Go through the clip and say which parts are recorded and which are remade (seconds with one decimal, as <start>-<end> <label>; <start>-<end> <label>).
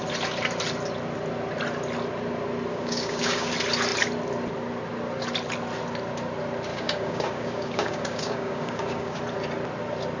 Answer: 0.0-2.7 recorded; 2.7-3.5 remade; 3.5-6.7 recorded; 6.7-9.2 remade; 9.2-10.2 recorded